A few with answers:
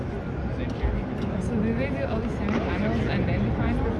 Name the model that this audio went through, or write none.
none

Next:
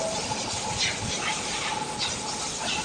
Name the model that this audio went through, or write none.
none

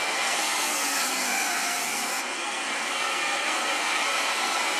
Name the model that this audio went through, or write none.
codec, SNAC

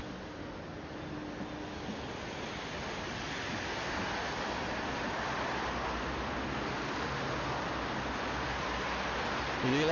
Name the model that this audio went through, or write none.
none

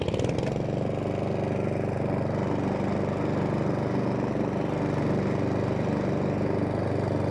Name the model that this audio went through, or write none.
none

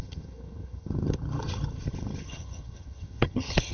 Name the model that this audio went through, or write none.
vocoder, HiFi-GAN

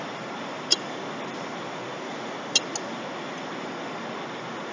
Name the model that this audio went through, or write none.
none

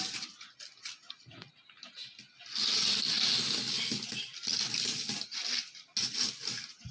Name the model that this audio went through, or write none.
none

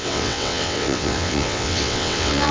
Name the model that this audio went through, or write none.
vocoder, WaveNeXt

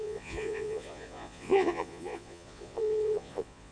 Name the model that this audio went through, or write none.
vocoder, Vocos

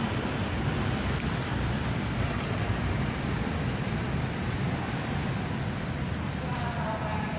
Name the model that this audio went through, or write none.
vocoder, BigVGAN v2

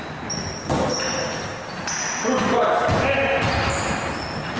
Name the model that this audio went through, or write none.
none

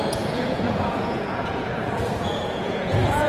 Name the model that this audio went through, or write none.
vocoder, Vocos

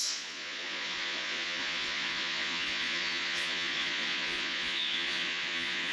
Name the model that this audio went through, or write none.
vocoder, Vocos